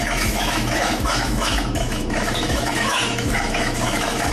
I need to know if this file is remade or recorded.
remade